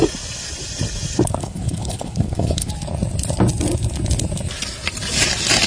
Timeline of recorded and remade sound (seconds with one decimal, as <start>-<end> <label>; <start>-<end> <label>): 0.0-1.4 recorded; 1.4-2.7 remade; 2.7-5.7 recorded